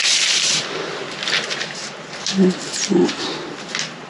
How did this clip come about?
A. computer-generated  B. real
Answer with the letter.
B